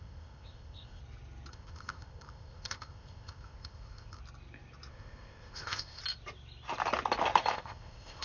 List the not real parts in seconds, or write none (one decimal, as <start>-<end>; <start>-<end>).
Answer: 0.0-1.0; 1.5-4.2; 4.9-6.0; 7.5-8.2